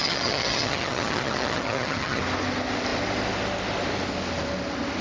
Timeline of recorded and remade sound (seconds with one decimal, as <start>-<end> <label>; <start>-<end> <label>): 0.0-2.2 remade; 2.2-5.0 recorded